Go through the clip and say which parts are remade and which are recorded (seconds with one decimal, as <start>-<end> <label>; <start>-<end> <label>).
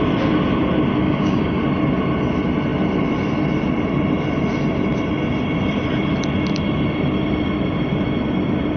0.0-1.0 recorded; 1.0-1.6 remade; 1.6-8.8 recorded